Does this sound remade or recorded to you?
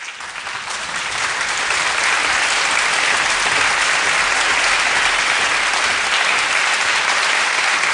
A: recorded